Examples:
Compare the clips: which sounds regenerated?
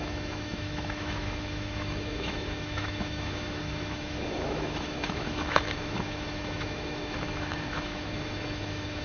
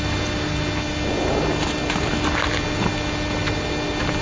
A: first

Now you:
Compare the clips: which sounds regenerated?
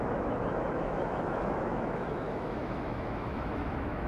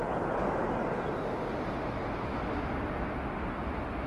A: first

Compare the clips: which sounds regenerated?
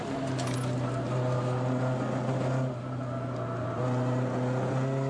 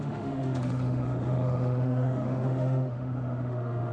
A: second